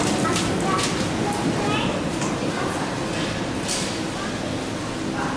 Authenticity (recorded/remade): recorded